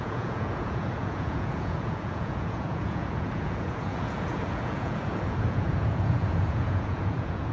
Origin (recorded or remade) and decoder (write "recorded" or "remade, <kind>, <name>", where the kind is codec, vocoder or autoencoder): remade, vocoder, Vocos